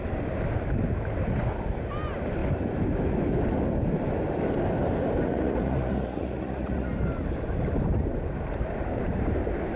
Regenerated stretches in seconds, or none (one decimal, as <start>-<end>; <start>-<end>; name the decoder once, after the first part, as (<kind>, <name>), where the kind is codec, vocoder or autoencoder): 5.2-6.9 (vocoder, Vocos)